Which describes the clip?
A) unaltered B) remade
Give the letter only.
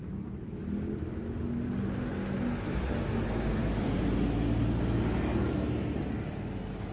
A